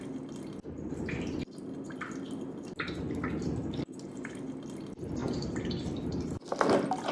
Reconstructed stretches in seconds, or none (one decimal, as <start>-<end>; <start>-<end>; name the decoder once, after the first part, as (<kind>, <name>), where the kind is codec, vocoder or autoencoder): none